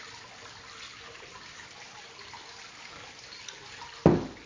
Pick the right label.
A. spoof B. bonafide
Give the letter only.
B